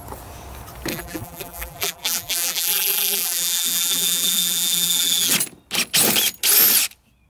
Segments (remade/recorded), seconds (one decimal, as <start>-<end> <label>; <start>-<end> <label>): 0.0-0.9 recorded; 0.9-5.3 remade; 5.3-7.3 recorded